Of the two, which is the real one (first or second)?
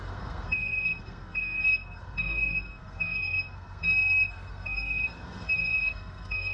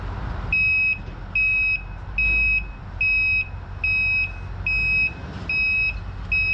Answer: second